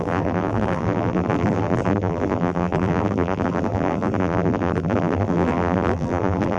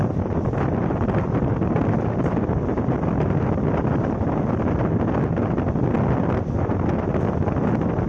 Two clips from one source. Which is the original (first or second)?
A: second